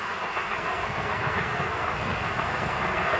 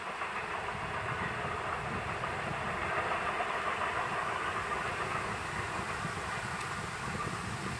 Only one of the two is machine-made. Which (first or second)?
first